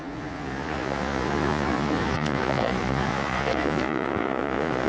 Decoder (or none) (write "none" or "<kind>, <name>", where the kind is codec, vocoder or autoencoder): vocoder, Vocos